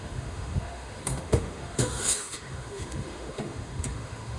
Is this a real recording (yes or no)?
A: no